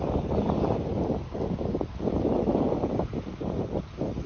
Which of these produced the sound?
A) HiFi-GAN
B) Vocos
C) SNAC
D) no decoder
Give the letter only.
D